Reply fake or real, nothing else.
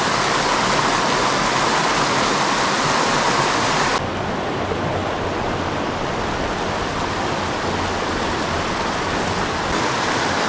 real